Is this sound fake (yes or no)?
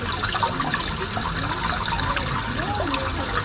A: no